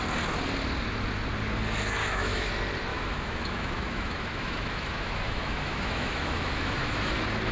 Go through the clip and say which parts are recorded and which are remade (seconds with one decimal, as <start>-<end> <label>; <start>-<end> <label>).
0.0-2.0 recorded; 2.0-2.5 remade; 2.5-2.9 recorded; 2.9-7.1 remade; 7.1-7.5 recorded